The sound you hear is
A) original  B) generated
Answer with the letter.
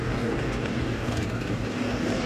B